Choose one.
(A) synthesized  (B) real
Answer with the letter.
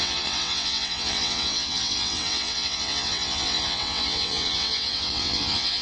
A